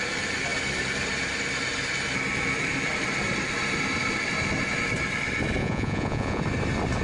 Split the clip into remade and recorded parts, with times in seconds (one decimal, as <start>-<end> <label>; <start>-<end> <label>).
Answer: 0.0-5.6 recorded; 5.6-6.4 remade; 6.4-7.0 recorded